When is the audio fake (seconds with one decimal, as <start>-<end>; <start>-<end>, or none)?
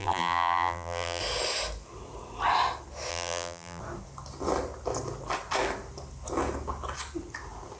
0.0-1.2; 3.1-3.8